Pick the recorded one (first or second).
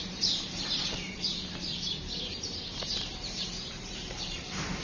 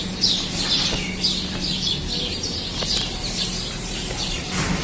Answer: second